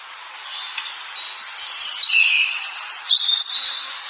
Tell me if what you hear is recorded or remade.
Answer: recorded